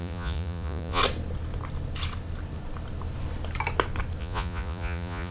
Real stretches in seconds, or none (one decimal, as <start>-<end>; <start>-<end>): 1.0-4.2